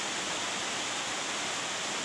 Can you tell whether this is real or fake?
real